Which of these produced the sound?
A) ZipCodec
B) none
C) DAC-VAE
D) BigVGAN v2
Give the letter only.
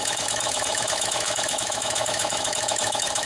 C